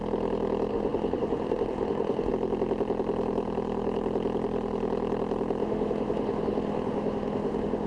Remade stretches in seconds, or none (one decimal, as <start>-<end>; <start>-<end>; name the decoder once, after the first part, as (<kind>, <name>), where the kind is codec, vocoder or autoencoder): 0.7-2.3 (autoencoder, DAC-VAE); 5.6-7.9